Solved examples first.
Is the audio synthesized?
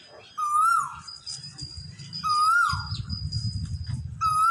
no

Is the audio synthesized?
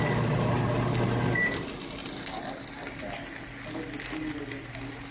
no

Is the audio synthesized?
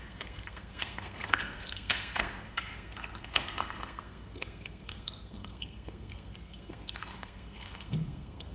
yes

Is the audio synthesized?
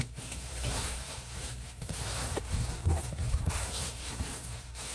yes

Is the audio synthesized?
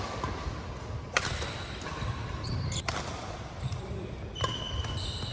no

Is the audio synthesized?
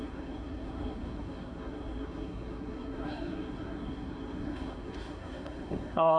yes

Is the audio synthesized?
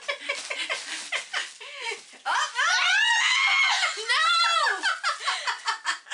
no